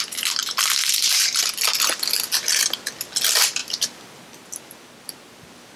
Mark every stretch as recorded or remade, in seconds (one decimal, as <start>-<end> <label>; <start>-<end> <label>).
0.0-5.8 recorded